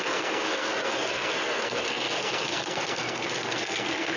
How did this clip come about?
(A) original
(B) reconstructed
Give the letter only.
B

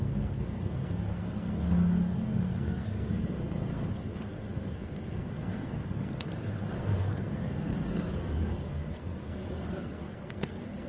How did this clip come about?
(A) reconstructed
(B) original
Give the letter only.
A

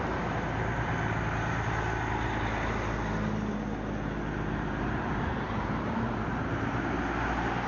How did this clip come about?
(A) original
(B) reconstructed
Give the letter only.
A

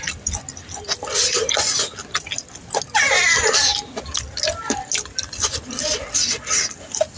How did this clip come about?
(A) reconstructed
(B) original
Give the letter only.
B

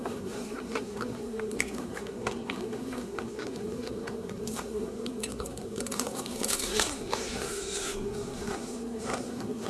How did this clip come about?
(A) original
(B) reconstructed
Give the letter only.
B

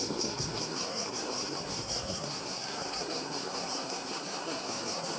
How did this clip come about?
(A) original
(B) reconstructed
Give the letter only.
B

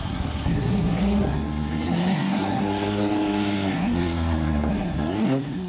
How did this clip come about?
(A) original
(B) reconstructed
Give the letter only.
B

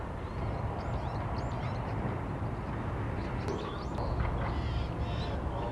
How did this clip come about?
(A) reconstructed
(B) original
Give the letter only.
B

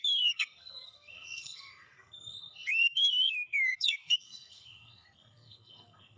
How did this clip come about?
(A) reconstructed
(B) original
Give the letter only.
A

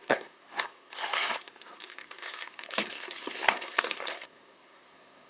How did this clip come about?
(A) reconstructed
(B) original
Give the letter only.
A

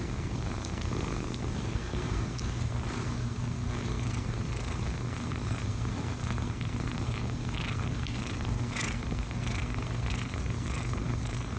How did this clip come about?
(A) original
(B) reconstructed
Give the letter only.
B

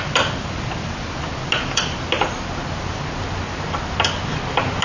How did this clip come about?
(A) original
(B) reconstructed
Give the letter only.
A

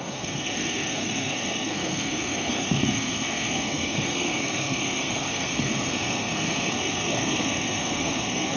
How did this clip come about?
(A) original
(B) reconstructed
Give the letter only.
B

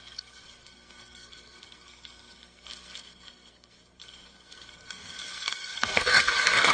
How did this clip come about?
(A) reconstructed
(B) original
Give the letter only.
A